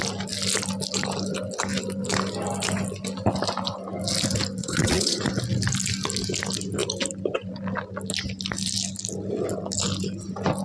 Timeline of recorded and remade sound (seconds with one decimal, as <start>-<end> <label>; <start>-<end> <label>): 0.0-4.6 recorded; 4.6-5.2 remade; 5.2-10.6 recorded